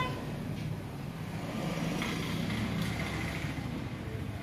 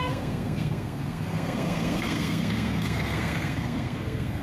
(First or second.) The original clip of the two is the first